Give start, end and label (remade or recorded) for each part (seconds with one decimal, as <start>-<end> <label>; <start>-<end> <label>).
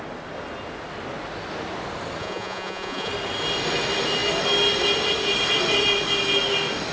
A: 0.0-2.2 recorded; 2.2-3.1 remade; 3.1-6.9 recorded